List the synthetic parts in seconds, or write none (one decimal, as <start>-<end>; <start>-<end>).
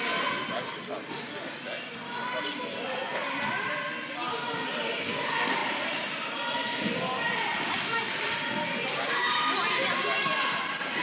5.6-6.8